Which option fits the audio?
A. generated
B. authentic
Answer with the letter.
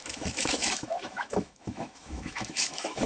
A